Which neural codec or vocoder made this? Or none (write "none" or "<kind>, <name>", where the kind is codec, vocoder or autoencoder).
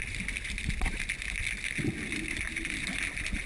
none